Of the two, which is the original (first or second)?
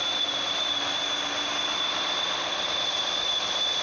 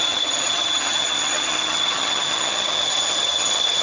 first